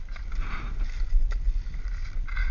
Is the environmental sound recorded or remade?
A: recorded